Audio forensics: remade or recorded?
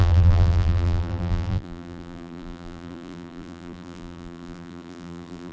remade